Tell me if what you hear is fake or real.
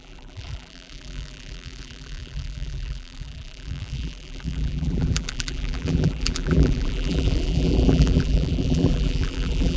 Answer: fake